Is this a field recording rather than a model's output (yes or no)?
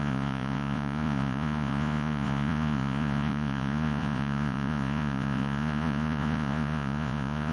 no